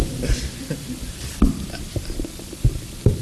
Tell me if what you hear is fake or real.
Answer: real